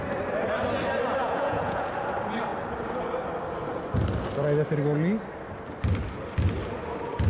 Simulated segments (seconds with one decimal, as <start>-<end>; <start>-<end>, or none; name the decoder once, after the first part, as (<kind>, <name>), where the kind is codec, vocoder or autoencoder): 1.2-1.9 (vocoder, Vocos)